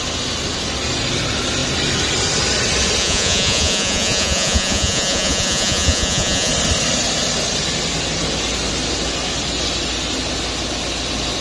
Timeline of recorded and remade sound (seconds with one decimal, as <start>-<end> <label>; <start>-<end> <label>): 0.0-3.0 recorded; 3.0-6.5 remade; 6.5-11.4 recorded

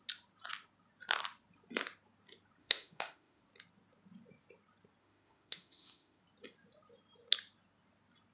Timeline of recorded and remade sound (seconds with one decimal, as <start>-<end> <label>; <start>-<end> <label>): 0.0-2.6 recorded; 2.6-3.4 remade; 3.4-5.0 recorded; 5.0-6.2 remade; 6.2-8.3 recorded